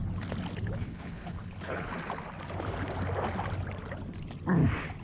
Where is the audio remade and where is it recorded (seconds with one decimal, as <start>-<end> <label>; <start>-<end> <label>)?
0.0-0.8 recorded; 0.8-1.9 remade; 1.9-5.0 recorded